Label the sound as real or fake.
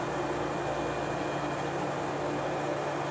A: real